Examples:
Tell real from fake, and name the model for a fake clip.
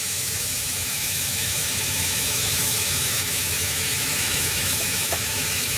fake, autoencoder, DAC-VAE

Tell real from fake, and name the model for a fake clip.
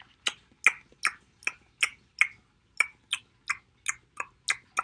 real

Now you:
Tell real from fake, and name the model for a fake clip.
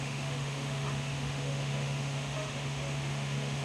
fake, autoencoder, DAC-VAE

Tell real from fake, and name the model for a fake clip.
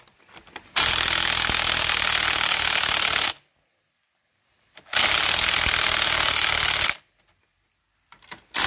real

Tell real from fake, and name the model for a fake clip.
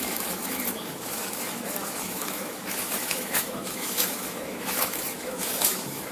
fake, autoencoder, DAC-VAE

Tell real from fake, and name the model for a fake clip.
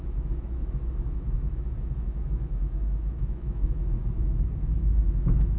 fake, autoencoder, DAC-VAE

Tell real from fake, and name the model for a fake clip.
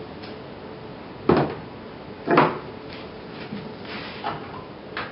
real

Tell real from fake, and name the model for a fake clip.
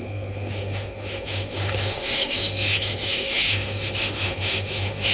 fake, autoencoder, DAC-VAE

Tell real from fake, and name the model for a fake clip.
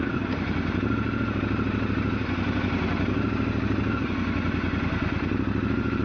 real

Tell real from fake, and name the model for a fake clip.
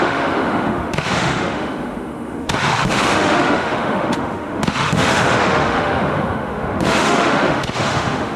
fake, autoencoder, DAC-VAE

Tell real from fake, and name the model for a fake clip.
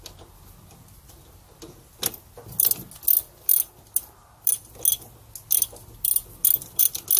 real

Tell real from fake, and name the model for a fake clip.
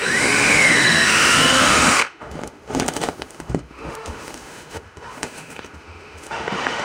fake, autoencoder, DAC-VAE